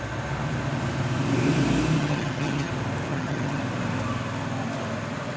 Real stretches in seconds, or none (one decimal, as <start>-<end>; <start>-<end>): 0.0-2.0; 2.7-3.1; 3.6-5.4